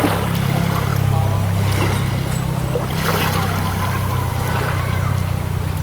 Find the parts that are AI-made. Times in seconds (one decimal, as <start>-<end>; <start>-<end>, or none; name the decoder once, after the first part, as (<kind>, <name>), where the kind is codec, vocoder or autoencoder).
4.3-5.1 (vocoder, BigVGAN v2)